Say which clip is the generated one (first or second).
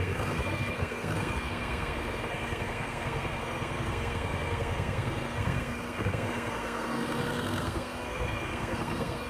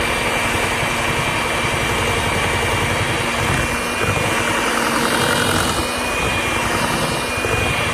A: first